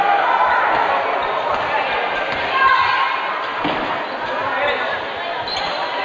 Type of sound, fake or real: real